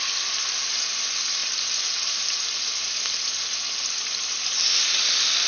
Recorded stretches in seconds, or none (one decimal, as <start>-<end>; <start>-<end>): 0.0-5.5

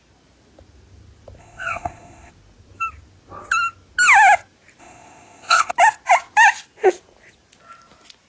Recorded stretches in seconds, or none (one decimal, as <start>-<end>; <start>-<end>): 0.0-1.4; 2.3-4.8; 5.7-8.3

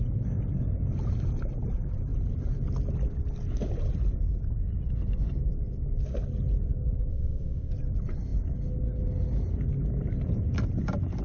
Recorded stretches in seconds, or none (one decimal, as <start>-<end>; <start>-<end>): 0.0-7.1; 7.7-11.2

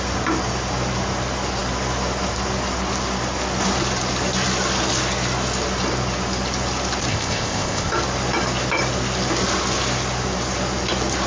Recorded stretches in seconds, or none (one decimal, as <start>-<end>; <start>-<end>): 0.0-7.1; 7.9-11.3

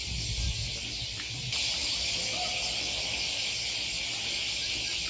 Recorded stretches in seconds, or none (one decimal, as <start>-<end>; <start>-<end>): 0.0-5.1

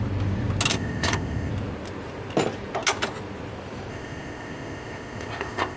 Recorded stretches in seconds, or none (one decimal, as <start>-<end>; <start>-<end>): 0.0-0.7; 1.5-3.9

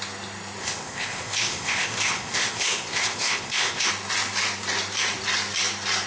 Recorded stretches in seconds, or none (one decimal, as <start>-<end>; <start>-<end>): 0.0-0.6; 3.9-6.1